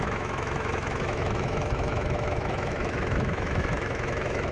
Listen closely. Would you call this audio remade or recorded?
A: remade